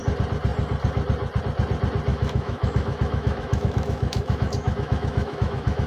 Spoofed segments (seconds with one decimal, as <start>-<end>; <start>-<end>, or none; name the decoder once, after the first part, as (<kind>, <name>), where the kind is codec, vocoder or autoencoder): 2.1-5.9 (autoencoder, DAC-VAE)